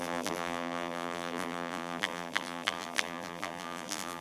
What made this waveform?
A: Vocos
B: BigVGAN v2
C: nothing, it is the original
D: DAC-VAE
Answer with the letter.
B